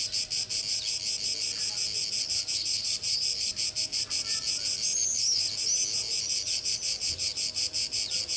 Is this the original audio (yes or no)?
yes